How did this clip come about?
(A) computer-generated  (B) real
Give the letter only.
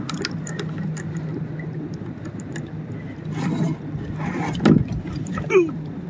B